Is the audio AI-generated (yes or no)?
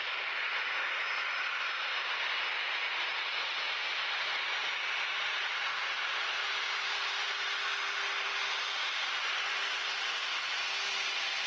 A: no